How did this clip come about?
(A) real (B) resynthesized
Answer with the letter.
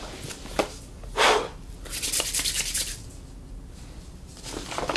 A